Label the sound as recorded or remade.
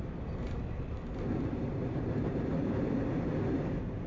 recorded